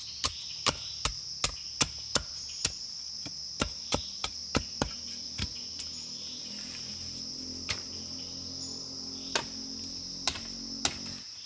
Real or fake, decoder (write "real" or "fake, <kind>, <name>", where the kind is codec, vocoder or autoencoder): real